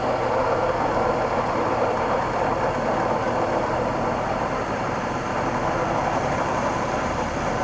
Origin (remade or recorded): remade